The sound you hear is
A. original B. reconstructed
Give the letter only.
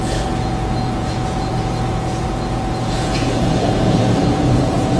B